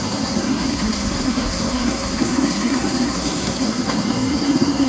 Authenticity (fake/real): fake